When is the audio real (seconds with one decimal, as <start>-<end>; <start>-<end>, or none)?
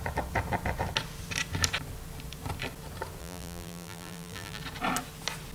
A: 0.0-3.2; 4.6-5.5